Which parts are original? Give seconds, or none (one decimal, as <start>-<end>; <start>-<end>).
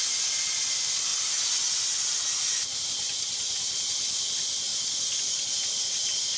0.0-6.4